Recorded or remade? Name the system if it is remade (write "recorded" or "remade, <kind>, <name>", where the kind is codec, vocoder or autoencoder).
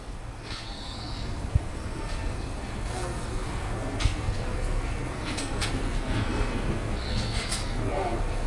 remade, codec, SNAC